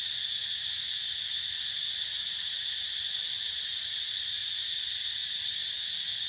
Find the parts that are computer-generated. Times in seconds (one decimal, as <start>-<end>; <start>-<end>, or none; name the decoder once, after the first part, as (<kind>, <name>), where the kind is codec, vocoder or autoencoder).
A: none